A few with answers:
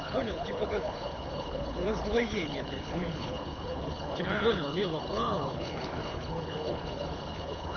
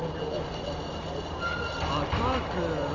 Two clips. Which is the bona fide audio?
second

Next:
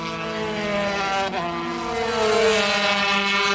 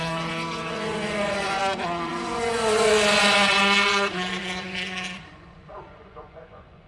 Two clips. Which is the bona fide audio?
first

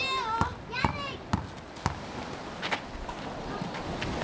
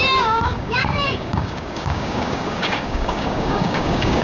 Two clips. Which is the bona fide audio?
first